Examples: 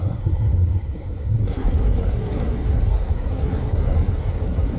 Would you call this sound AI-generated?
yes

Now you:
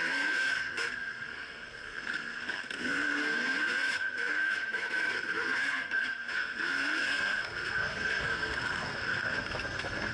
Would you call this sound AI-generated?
yes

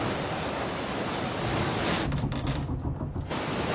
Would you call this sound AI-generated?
no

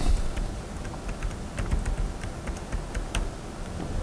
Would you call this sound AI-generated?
no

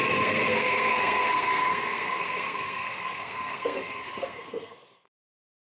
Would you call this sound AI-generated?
yes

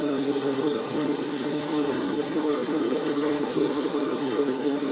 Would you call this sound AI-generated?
yes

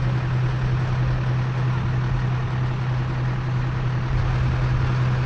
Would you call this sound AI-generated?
no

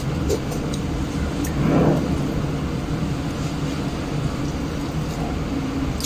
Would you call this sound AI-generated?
no